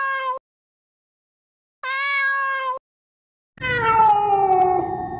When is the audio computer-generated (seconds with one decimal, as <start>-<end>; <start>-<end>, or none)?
none